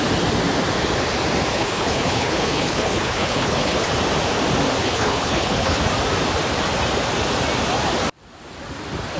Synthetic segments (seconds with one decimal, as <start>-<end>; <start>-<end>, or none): 1.5-3.9; 4.8-5.8